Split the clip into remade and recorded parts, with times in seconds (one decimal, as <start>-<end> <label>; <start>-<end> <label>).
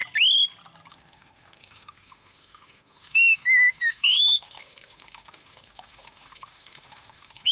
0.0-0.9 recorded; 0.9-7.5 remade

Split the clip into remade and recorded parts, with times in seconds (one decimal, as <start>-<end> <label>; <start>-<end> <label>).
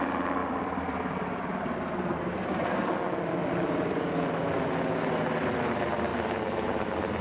0.0-0.4 recorded; 0.4-2.3 remade; 2.3-3.4 recorded; 3.4-4.0 remade; 4.0-6.1 recorded; 6.1-7.2 remade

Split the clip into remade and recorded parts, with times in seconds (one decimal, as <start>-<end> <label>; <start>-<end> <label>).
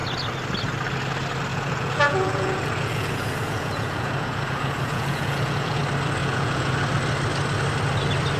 0.0-1.5 recorded; 1.5-5.8 remade; 5.8-6.2 recorded; 6.2-6.7 remade; 6.7-8.4 recorded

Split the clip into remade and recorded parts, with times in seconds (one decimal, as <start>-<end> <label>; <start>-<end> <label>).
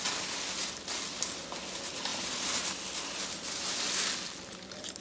0.0-5.0 recorded